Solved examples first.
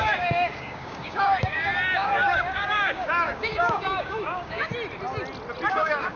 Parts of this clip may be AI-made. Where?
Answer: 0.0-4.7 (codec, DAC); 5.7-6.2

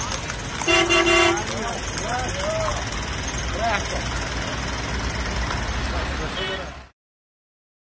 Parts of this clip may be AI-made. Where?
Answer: none